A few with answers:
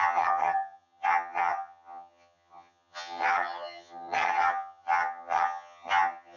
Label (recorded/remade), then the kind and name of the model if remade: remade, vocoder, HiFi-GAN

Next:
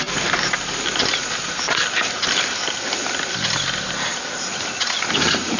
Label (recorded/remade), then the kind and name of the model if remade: recorded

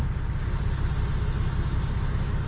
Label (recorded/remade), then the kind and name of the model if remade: recorded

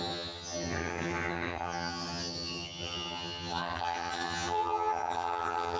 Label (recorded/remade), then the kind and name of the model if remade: remade, vocoder, HiFi-GAN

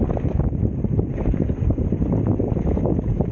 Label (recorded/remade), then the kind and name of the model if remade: recorded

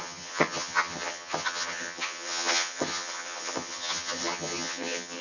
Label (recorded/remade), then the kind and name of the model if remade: remade, vocoder, HiFi-GAN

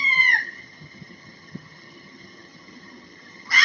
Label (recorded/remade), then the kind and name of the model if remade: remade, vocoder, HiFi-GAN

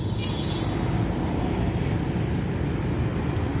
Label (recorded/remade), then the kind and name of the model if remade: recorded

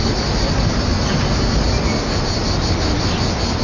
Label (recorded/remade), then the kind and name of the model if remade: recorded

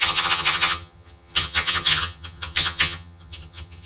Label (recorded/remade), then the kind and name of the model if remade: remade, vocoder, HiFi-GAN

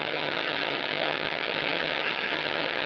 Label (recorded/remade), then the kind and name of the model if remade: remade, vocoder, HiFi-GAN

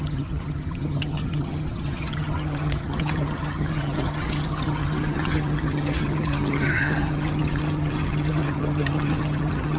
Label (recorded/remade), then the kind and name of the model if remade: remade, vocoder, HiFi-GAN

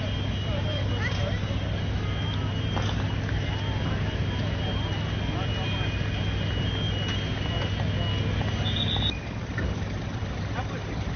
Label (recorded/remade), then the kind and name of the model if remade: recorded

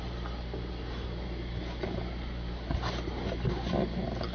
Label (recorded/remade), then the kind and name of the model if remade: recorded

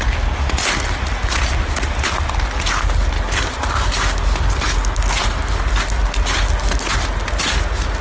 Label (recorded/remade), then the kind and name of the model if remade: recorded